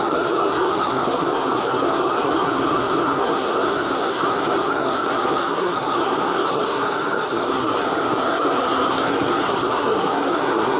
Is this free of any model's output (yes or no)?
no